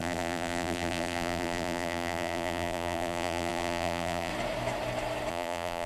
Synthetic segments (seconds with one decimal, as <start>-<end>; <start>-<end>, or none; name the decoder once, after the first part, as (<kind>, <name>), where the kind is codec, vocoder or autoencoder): 0.0-4.3 (vocoder, BigVGAN v2); 5.3-5.9